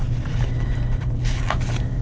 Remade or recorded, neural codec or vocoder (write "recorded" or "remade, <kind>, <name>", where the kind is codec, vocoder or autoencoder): recorded